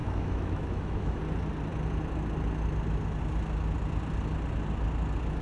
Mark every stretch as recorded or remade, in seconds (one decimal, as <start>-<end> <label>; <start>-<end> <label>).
0.0-1.2 remade; 1.2-5.4 recorded